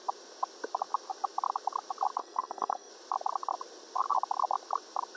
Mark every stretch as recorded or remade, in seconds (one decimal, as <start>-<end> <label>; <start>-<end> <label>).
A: 0.0-2.2 recorded; 2.2-2.9 remade; 2.9-5.2 recorded